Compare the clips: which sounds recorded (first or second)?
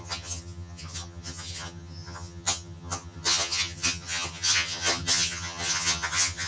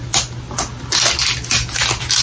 second